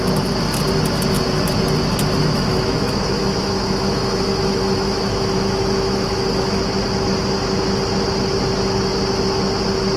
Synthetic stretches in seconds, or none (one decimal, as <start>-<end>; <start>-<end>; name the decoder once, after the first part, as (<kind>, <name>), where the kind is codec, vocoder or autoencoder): 2.2-6.6 (autoencoder, DAC-VAE)